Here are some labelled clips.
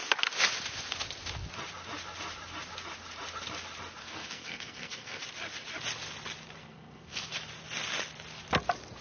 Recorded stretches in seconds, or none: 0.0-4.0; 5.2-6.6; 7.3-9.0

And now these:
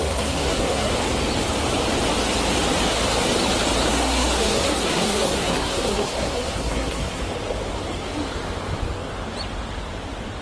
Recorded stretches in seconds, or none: 0.9-3.9; 7.2-10.4

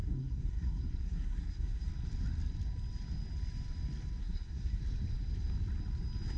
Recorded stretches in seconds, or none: 1.9-4.2; 4.8-6.4

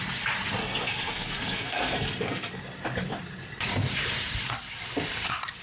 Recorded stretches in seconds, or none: 0.0-0.6; 2.6-5.6